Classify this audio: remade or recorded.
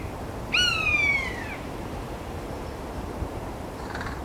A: remade